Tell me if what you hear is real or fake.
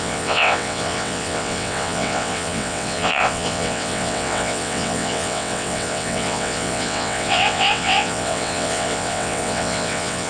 fake